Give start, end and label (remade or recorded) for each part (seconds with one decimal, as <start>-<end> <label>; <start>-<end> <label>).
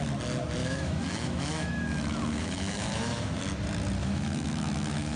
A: 0.0-0.6 recorded; 0.6-3.4 remade; 3.4-4.0 recorded; 4.0-5.2 remade